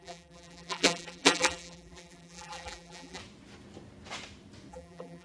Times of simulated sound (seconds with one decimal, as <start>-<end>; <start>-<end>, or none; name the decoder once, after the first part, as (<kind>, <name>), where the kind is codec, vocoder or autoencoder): 0.0-3.2 (vocoder, BigVGAN v2); 4.7-5.2